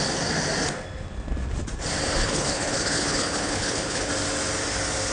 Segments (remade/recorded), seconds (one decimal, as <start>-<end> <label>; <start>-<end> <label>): 0.0-2.2 recorded; 2.2-4.1 remade; 4.1-5.1 recorded